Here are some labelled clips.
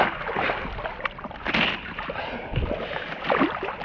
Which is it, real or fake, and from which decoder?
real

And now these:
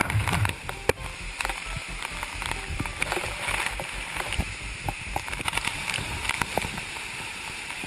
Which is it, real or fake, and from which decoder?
fake, vocoder, BigVGAN v2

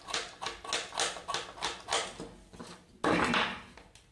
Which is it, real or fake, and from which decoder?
real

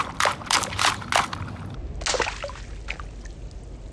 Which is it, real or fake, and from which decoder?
real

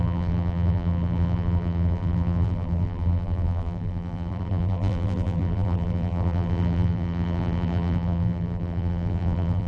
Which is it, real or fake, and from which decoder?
fake, vocoder, BigVGAN v2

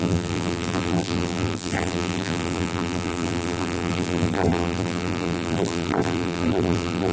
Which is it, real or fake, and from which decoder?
fake, vocoder, BigVGAN v2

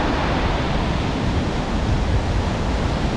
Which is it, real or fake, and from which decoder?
real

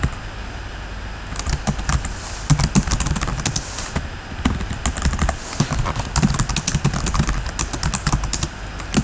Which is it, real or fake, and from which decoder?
real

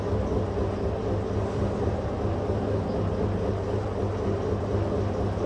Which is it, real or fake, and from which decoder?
real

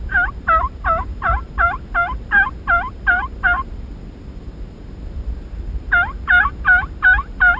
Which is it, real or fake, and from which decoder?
fake, vocoder, BigVGAN v2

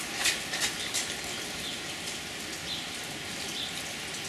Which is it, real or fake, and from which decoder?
real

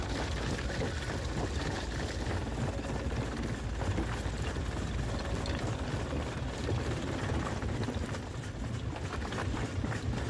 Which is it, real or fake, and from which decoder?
real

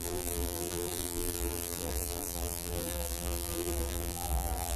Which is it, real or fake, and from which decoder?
fake, vocoder, BigVGAN v2